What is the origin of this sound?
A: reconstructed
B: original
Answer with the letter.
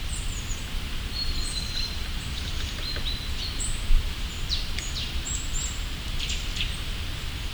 A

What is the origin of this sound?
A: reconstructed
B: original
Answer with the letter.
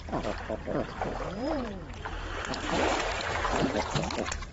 A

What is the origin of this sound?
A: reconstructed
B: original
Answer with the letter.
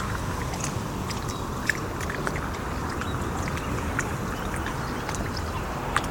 B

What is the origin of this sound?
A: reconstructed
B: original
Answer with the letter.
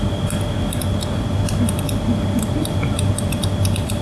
B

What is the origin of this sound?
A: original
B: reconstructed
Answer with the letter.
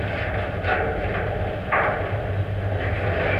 A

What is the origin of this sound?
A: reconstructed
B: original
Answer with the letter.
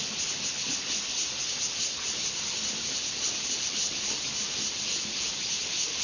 B